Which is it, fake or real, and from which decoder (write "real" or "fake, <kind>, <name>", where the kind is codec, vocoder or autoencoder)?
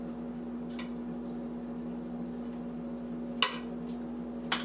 real